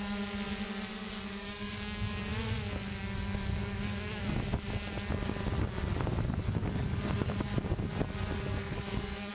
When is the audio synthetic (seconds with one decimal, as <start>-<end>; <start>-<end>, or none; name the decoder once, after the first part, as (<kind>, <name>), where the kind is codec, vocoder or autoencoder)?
0.9-2.2 (codec, DAC); 3.0-4.2; 6.6-7.3; 8.6-9.3